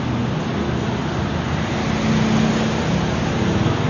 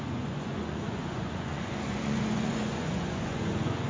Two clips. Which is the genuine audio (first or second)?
first